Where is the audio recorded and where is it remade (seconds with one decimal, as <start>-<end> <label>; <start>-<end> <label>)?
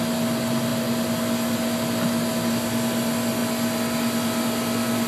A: 0.0-5.1 recorded